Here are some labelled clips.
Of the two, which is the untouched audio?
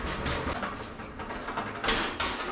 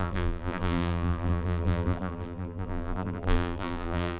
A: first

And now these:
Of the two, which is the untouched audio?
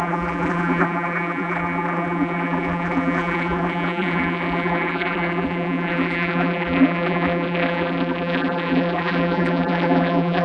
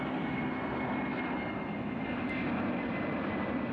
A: second